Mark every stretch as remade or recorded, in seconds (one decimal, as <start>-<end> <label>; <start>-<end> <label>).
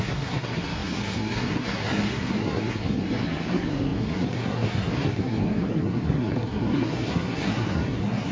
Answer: 0.0-8.3 remade